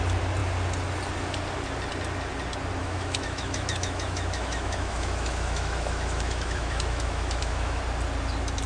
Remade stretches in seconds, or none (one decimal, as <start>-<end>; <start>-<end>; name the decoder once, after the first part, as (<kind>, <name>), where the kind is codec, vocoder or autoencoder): 2.8-7.8 (autoencoder, DAC-VAE)